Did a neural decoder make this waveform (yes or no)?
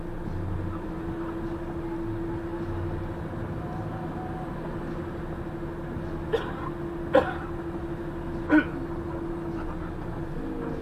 no